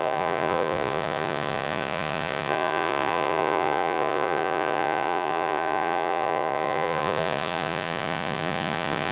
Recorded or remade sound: remade